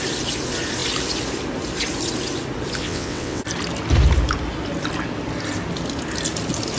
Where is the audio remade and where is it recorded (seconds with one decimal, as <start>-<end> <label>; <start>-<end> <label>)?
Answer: 0.0-2.8 recorded; 2.8-3.4 remade; 3.4-6.8 recorded